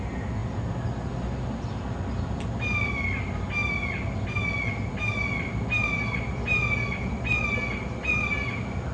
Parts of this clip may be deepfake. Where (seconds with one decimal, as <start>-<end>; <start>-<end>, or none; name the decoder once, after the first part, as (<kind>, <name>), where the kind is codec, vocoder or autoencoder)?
none